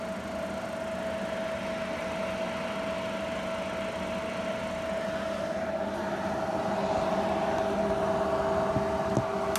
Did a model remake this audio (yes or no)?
no